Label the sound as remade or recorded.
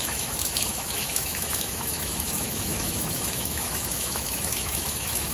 remade